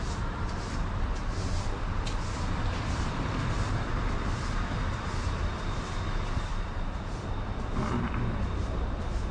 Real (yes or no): no